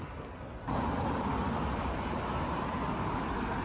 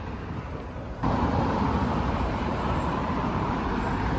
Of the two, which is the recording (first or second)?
first